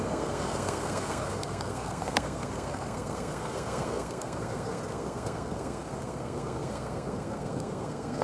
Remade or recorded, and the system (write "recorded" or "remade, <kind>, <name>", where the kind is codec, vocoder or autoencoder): remade, codec, SNAC